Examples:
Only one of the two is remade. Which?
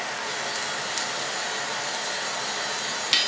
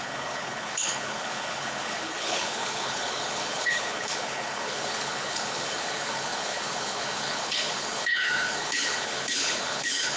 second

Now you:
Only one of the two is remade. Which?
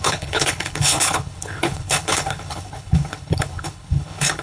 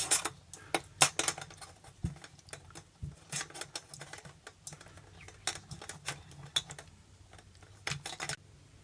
first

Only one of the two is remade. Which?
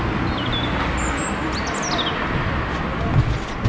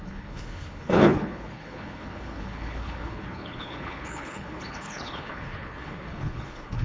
second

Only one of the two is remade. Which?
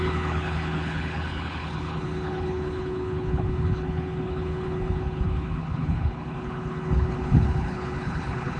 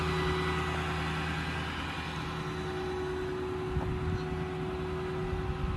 first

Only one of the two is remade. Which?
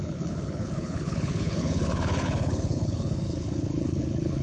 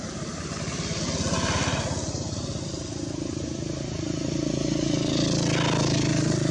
first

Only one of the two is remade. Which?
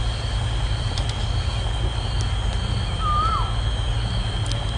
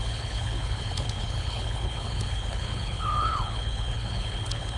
second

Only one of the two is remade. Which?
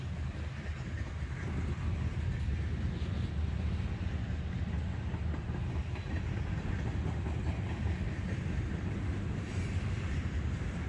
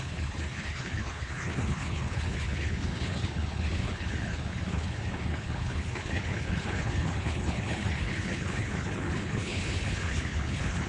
second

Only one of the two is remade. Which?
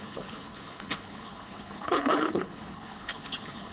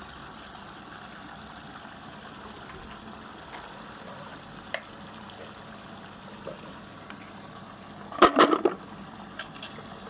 first